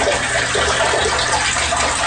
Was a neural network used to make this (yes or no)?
no